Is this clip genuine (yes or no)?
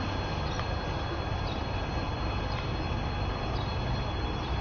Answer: yes